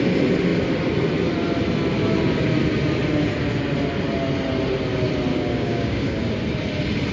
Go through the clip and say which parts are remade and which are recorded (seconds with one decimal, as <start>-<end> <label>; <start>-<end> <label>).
0.0-5.3 recorded; 5.3-6.2 remade; 6.2-7.1 recorded